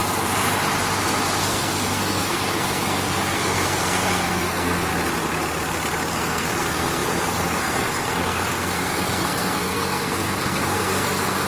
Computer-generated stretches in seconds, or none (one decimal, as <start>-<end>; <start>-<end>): 1.4-4.9; 6.1-11.5